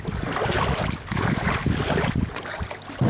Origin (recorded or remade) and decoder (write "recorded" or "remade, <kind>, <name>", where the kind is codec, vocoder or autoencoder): recorded